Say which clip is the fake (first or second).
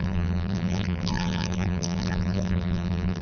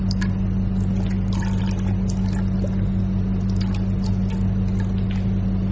first